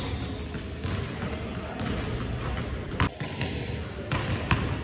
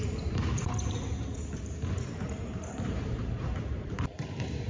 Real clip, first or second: first